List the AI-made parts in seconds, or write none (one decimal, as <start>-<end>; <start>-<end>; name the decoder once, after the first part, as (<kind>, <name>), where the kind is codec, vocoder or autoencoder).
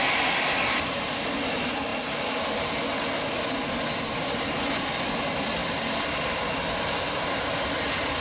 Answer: none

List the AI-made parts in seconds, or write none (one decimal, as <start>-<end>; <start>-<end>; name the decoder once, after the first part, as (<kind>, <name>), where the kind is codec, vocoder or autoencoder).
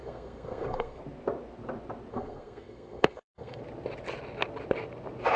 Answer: 0.0-1.0 (codec, SNAC); 2.1-3.6